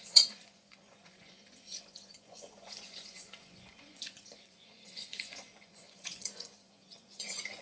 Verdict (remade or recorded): remade